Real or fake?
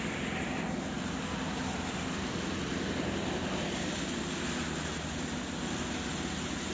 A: real